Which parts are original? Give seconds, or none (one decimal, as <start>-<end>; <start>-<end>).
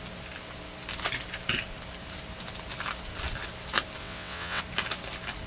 0.0-4.0; 4.6-5.5